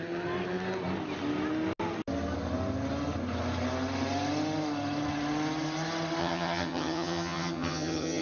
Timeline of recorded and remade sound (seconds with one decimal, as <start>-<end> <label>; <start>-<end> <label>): 0.0-6.2 recorded; 6.2-8.2 remade